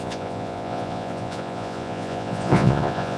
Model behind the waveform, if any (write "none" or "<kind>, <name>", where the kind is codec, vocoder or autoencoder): vocoder, Vocos